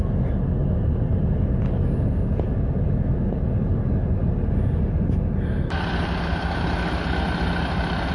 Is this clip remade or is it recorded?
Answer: recorded